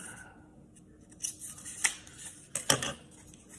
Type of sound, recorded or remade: recorded